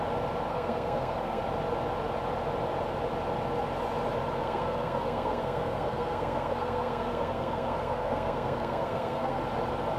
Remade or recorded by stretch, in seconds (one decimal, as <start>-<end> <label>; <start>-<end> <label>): 0.0-0.5 recorded; 0.5-1.4 remade; 1.4-4.4 recorded; 4.4-9.4 remade; 9.4-10.0 recorded